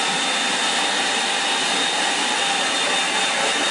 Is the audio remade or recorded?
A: recorded